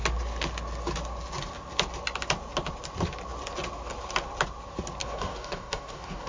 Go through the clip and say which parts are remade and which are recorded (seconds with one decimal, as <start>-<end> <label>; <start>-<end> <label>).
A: 0.0-5.0 recorded; 5.0-6.3 remade